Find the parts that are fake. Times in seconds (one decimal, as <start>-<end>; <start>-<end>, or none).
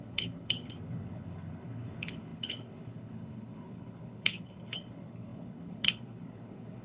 0.0-6.8